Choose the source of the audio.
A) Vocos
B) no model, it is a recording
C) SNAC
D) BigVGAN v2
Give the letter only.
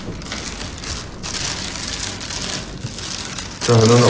B